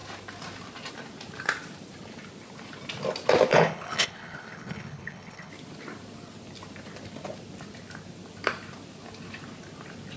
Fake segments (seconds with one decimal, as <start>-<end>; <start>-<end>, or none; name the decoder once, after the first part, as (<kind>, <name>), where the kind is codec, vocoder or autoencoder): 3.5-5.5 (codec, HILCodec)